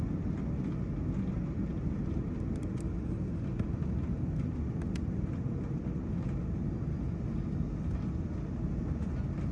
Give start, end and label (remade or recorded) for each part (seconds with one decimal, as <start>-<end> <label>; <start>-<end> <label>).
0.0-9.5 recorded